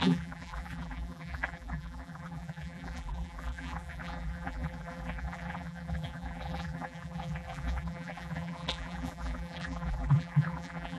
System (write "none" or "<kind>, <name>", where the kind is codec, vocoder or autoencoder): vocoder, BigVGAN v2